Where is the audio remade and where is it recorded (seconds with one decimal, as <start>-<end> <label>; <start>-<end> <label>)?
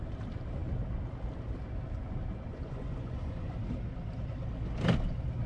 0.0-2.5 recorded; 2.5-3.6 remade; 3.6-5.5 recorded